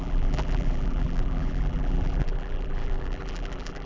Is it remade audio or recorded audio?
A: remade